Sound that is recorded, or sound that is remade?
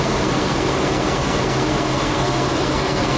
remade